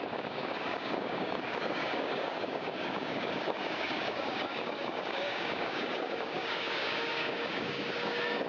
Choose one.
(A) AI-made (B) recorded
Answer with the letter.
A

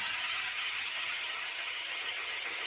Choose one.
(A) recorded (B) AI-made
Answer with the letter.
B